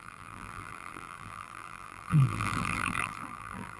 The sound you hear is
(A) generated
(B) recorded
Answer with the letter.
A